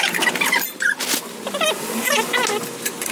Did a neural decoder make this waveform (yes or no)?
no